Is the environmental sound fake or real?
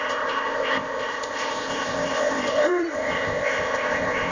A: fake